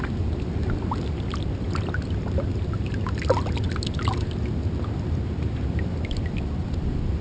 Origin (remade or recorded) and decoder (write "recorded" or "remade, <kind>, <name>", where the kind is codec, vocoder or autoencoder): recorded